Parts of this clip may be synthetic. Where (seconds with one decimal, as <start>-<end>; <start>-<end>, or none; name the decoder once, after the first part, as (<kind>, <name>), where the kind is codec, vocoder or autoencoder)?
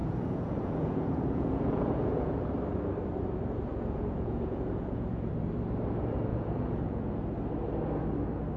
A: 0.0-2.4 (vocoder, Vocos); 3.7-5.3; 6.3-7.2